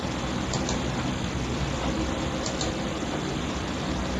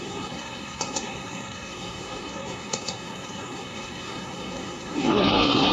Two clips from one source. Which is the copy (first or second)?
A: second